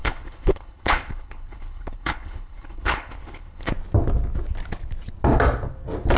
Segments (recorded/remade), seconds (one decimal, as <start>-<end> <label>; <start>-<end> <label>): 0.0-3.7 remade; 3.7-6.2 recorded